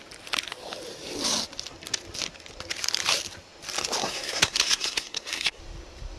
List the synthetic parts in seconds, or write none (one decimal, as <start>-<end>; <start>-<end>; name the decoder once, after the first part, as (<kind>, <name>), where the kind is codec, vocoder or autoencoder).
4.0-5.6 (codec, SNAC)